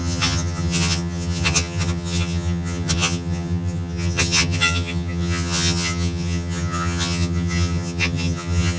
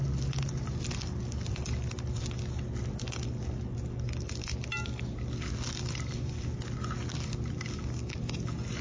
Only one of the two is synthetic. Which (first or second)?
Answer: first